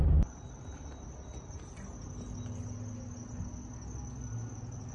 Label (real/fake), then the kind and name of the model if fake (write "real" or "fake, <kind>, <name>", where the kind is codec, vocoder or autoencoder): real